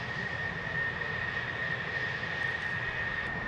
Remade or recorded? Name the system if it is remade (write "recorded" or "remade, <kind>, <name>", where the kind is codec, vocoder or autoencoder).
recorded